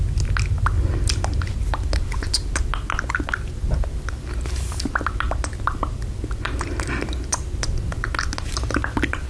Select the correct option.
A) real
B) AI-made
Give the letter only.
A